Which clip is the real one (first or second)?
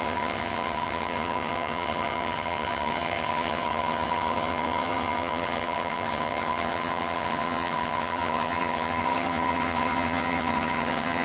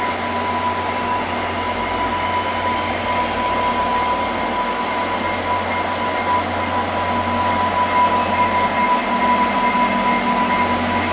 second